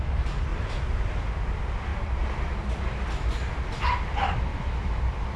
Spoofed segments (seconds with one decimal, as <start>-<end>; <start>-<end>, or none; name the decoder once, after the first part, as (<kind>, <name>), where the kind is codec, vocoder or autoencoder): 4.5-5.0 (autoencoder, DAC-VAE)